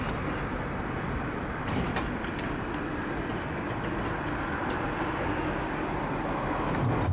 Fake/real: real